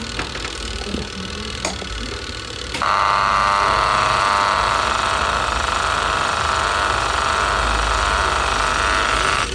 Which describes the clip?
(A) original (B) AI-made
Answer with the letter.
A